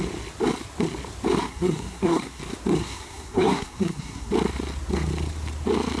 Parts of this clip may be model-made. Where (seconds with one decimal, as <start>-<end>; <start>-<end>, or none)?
1.4-2.4; 2.8-4.3